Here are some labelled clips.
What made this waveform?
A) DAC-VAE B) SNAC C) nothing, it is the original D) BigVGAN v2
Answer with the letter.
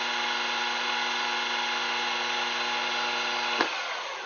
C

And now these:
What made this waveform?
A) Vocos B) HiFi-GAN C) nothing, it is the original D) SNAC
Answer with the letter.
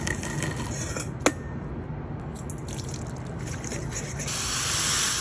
C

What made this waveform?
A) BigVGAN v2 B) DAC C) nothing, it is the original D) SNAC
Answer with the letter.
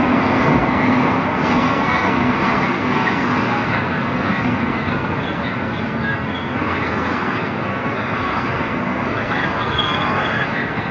D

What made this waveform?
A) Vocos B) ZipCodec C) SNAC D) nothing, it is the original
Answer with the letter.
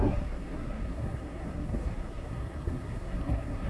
C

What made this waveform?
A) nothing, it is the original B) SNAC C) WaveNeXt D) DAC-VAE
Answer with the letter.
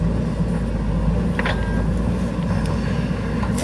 A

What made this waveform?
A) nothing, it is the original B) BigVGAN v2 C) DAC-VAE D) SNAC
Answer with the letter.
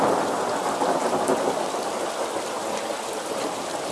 A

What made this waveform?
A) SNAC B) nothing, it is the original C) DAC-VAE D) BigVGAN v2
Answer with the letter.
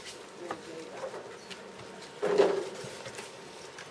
B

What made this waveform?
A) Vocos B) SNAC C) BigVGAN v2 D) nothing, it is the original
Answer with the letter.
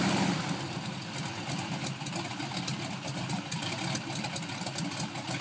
D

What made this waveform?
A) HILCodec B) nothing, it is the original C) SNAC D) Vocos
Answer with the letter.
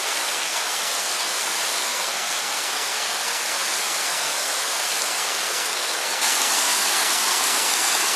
C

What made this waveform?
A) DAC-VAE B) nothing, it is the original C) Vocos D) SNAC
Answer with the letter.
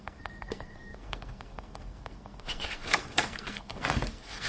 D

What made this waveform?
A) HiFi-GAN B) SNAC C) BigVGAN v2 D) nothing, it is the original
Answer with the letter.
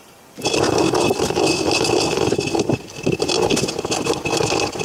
D